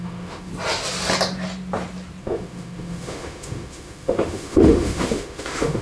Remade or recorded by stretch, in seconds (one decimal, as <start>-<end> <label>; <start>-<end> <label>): 0.0-0.5 remade; 0.5-2.2 recorded; 2.2-5.8 remade